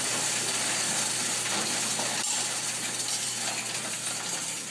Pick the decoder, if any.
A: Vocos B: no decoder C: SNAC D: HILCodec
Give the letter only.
B